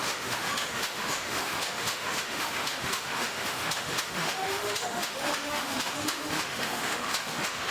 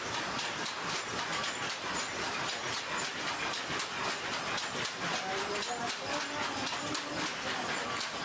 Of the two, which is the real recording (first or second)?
second